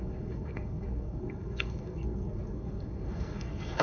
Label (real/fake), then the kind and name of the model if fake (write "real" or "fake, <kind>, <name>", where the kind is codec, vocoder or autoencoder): fake, codec, SNAC